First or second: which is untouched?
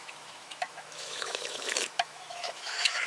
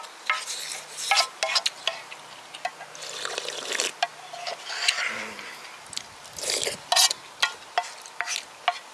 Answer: second